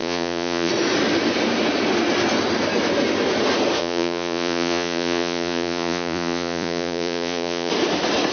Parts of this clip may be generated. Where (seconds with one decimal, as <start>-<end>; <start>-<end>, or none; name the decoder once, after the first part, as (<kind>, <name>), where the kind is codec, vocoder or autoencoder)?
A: 0.0-0.7 (vocoder, Vocos); 3.8-7.7